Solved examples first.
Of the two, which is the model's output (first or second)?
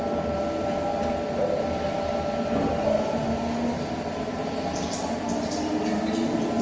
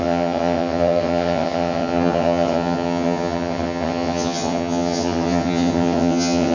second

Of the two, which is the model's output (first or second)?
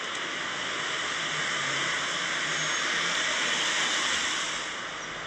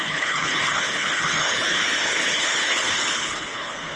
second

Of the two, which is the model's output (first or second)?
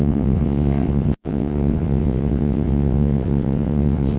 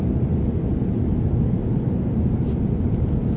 first